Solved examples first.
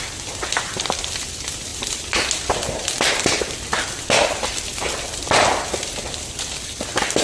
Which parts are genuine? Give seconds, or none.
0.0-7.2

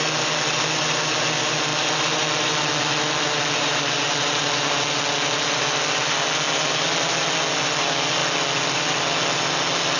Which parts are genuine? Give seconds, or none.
0.0-10.0